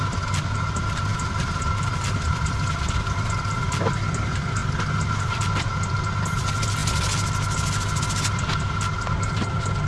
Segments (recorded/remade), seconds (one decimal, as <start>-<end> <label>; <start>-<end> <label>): 0.0-4.6 remade; 4.6-5.1 recorded; 5.1-6.8 remade; 6.8-9.9 recorded